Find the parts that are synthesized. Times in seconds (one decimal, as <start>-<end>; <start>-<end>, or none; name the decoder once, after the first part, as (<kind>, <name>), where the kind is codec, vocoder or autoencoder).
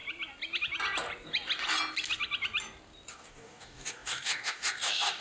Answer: 3.1-5.2 (codec, DAC)